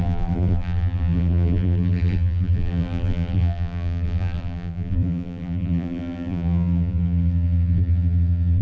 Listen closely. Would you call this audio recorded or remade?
remade